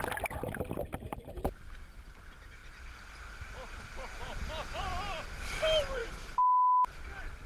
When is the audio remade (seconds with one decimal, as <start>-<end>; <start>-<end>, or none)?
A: 6.0-7.0

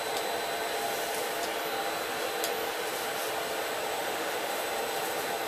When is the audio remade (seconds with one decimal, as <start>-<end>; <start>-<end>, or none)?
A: 4.0-4.6